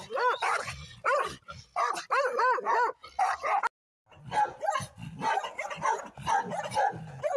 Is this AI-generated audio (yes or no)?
no